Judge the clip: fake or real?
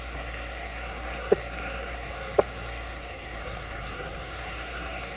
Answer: fake